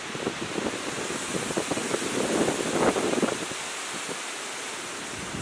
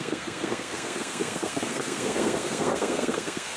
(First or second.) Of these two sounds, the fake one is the second